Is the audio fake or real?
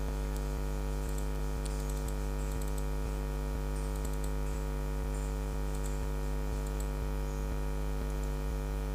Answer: real